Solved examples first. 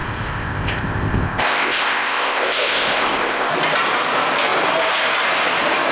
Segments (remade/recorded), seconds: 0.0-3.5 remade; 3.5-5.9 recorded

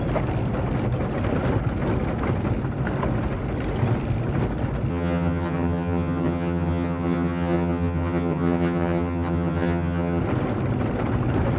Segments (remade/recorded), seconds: 0.0-4.9 recorded; 4.9-10.2 remade; 10.2-11.6 recorded

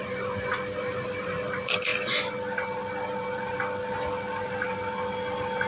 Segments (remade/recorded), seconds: 0.0-5.7 recorded

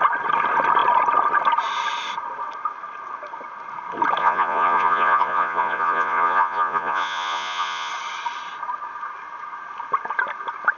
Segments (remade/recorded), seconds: 0.0-4.2 recorded; 4.2-7.9 remade; 7.9-10.8 recorded

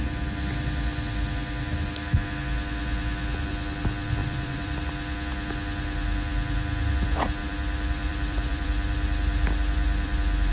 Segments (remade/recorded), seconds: 0.0-4.2 recorded; 4.2-4.8 remade; 4.8-7.4 recorded; 7.4-10.5 remade

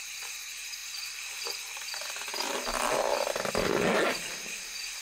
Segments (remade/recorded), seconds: 0.0-5.0 recorded